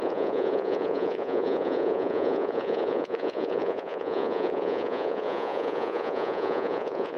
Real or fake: fake